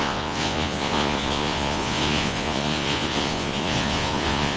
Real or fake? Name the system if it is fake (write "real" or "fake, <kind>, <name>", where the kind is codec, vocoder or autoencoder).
fake, vocoder, Vocos